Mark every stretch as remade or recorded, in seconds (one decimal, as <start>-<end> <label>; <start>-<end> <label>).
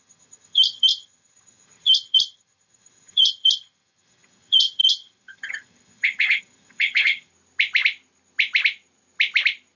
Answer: 0.0-7.3 remade; 7.3-9.8 recorded